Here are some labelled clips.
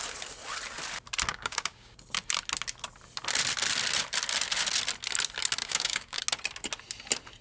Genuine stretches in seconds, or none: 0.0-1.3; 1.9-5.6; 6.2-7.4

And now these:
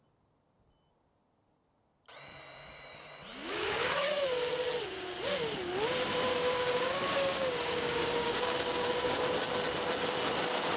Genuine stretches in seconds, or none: 0.0-3.3; 4.1-6.3; 9.2-10.8

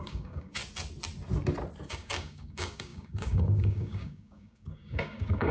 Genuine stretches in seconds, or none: 0.6-1.9

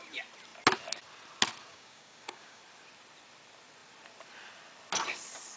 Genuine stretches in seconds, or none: 0.0-1.7; 2.6-5.6

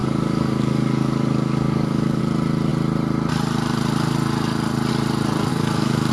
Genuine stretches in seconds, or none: 2.2-5.5

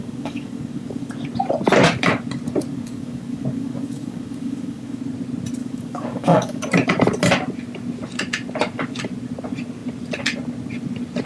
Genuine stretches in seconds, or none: 1.1-2.7; 5.0-5.6; 6.6-11.3

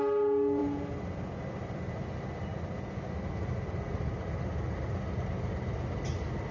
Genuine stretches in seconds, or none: 0.0-6.5